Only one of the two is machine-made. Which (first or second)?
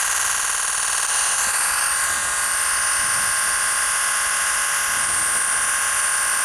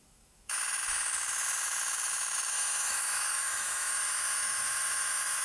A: second